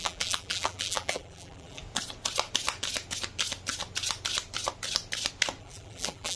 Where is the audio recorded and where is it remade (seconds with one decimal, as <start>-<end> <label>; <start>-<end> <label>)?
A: 0.0-1.8 remade; 1.8-5.6 recorded; 5.6-6.4 remade